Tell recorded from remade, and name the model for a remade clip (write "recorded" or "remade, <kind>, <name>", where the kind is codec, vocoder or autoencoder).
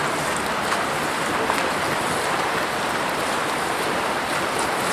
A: recorded